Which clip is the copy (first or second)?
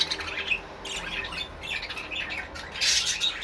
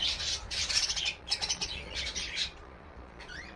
second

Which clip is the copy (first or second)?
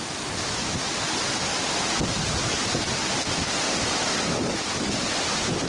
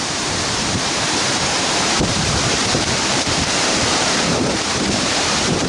second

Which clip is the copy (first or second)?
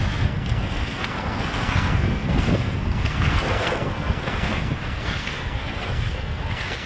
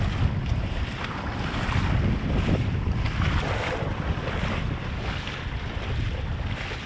first